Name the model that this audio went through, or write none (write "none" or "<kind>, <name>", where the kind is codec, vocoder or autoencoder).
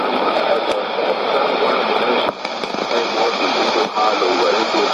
vocoder, BigVGAN v2